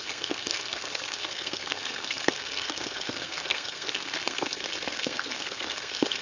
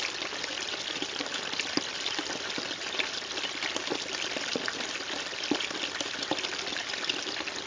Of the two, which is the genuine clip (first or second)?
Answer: second